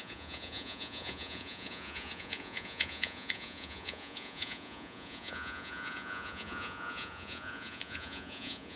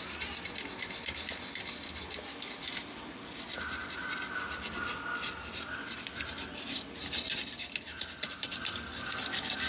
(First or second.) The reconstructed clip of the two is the first